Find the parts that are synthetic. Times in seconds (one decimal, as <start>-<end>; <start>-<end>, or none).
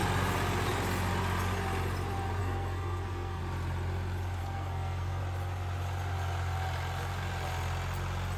2.4-3.4; 4.4-5.2